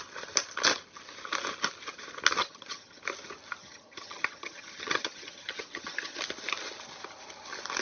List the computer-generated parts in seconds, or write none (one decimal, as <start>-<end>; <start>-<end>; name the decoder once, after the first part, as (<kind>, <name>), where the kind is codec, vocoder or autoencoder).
2.4-3.0 (vocoder, HiFi-GAN); 3.6-6.2